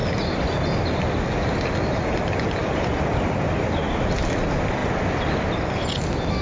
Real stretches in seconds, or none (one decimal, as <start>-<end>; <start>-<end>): 0.0-6.4